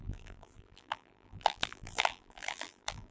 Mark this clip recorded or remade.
remade